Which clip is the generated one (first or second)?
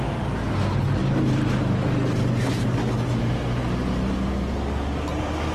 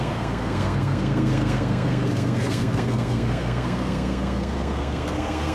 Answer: second